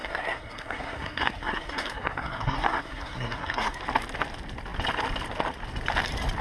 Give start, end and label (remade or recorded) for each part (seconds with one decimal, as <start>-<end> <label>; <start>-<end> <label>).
0.0-3.8 remade; 3.8-6.4 recorded